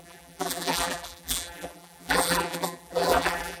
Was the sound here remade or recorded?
remade